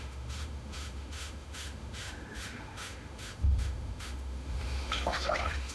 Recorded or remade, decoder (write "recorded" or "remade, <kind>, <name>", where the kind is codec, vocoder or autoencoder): remade, autoencoder, DAC-VAE